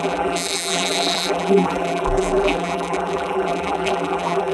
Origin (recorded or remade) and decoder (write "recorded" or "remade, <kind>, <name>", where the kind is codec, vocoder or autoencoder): remade, vocoder, BigVGAN v2